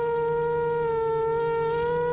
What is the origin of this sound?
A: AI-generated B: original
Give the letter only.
B